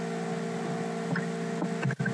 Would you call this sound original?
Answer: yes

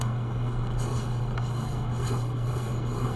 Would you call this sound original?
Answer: no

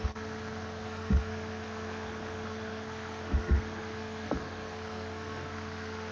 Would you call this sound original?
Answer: no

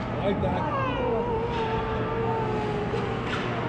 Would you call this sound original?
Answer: yes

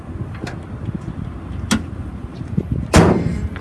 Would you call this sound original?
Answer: yes